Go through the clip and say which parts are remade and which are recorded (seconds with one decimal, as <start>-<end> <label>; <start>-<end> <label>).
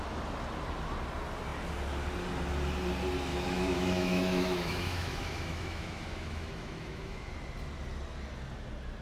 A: 0.0-3.3 recorded; 3.3-7.3 remade; 7.3-9.0 recorded